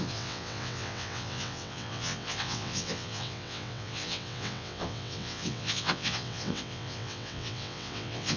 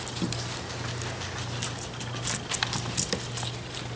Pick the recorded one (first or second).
second